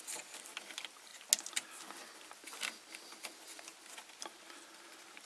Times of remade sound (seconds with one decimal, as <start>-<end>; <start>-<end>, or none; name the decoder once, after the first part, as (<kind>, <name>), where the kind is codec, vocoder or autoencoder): none